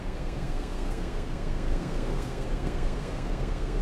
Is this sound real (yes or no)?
no